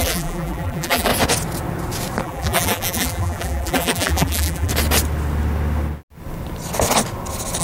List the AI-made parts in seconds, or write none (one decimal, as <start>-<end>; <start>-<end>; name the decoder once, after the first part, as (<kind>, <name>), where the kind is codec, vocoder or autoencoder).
0.0-1.1 (vocoder, BigVGAN v2); 2.2-4.7